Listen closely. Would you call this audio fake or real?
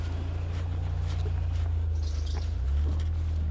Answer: real